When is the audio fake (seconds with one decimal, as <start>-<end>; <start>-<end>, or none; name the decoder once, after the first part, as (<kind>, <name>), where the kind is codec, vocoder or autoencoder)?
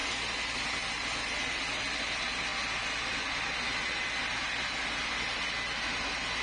none